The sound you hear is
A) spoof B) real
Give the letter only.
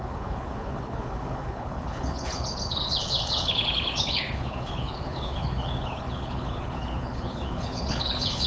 A